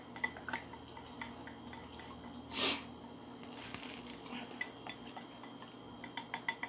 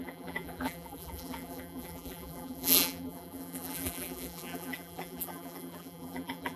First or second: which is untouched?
first